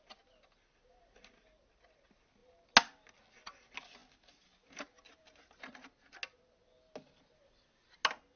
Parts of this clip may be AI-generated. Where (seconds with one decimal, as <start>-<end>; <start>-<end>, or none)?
none